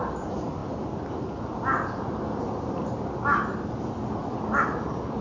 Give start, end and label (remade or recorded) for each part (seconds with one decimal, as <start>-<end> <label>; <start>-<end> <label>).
0.0-5.2 recorded